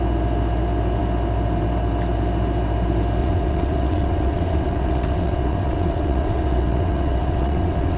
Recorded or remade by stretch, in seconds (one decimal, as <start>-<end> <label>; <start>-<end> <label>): 0.0-3.2 recorded; 3.2-8.0 remade